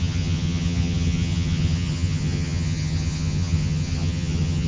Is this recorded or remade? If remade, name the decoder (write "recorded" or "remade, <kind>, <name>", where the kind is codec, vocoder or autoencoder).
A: remade, vocoder, HiFi-GAN